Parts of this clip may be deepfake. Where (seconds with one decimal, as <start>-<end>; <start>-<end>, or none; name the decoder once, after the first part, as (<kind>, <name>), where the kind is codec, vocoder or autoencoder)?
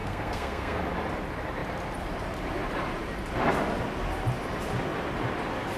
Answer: 0.0-0.8 (codec, SNAC)